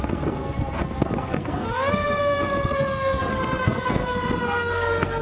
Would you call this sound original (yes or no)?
no